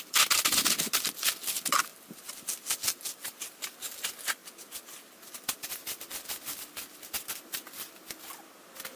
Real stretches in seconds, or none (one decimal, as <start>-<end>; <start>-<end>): 0.0-1.9; 3.6-4.4; 6.0-9.0